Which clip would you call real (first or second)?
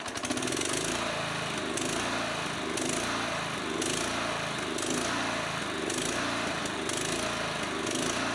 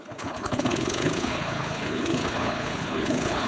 first